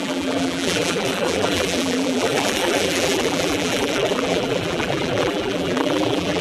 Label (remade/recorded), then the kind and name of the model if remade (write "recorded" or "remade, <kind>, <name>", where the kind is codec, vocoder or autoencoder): remade, vocoder, BigVGAN v2